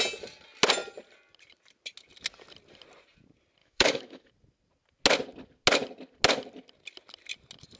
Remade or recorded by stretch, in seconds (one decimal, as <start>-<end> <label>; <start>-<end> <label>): 0.0-3.6 recorded; 3.6-4.3 remade; 4.3-7.8 recorded